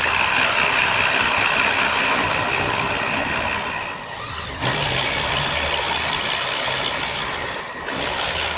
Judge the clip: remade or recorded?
recorded